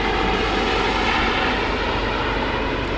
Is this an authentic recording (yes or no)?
yes